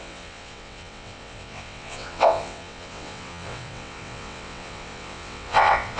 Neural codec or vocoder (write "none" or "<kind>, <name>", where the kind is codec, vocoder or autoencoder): vocoder, WaveNeXt